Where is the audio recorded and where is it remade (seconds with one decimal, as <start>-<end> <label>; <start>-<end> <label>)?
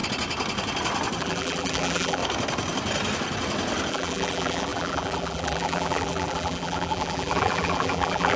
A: 0.0-1.2 recorded; 1.2-2.2 remade; 2.2-3.9 recorded; 3.9-8.4 remade